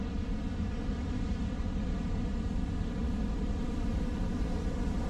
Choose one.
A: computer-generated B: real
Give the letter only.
B